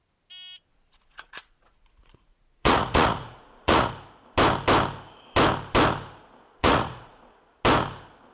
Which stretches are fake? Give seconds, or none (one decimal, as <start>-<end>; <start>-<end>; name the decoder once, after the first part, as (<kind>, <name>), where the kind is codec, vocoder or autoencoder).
0.7-3.9 (vocoder, Vocos); 6.6-7.3